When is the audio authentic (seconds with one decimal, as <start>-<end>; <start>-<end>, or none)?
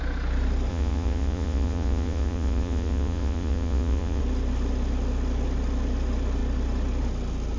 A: 0.0-0.7; 4.2-7.6